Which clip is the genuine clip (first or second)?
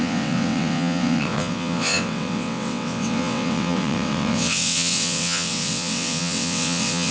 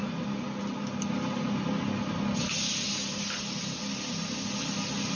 second